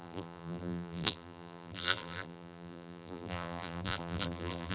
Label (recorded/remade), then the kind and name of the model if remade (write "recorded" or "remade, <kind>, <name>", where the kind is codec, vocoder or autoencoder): remade, vocoder, BigVGAN v2